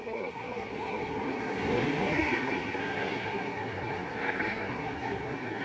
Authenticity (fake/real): fake